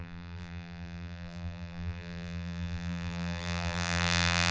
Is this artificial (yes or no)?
yes